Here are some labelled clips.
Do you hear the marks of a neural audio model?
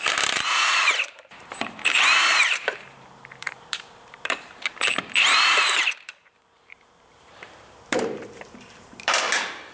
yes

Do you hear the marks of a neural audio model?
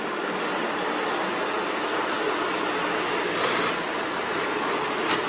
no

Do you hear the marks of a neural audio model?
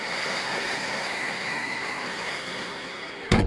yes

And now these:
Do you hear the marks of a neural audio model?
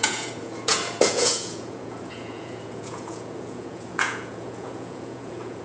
yes